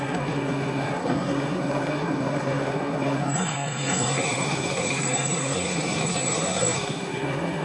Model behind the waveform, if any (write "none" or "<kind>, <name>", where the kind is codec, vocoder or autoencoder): codec, SNAC